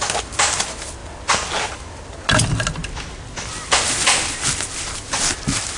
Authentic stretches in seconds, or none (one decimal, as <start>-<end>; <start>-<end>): 0.0-5.8